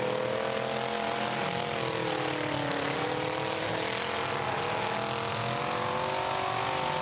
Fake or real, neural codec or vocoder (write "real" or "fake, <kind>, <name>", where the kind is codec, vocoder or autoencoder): real